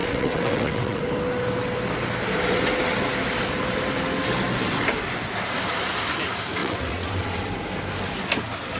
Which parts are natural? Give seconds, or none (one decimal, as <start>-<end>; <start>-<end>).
1.0-6.6; 7.4-8.8